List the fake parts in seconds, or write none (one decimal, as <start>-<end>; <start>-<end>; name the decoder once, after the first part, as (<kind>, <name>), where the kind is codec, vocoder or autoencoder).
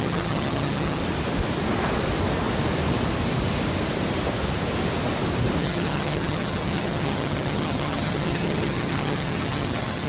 0.0-1.0 (vocoder, HiFi-GAN); 5.6-10.1